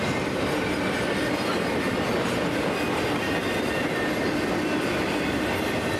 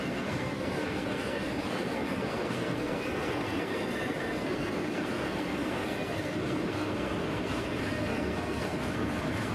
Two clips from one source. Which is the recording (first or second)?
first